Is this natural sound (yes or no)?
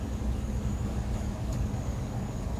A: no